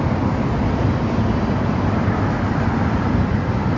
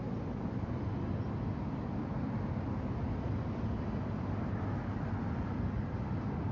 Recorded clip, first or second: second